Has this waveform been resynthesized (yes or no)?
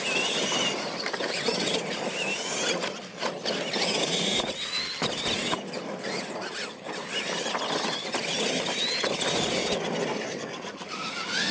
no